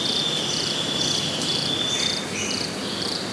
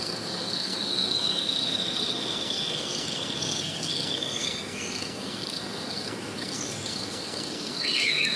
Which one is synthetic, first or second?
second